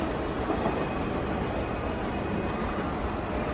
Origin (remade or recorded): recorded